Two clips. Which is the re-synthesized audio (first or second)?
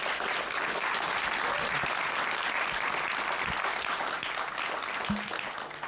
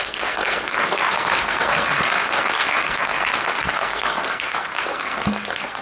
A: second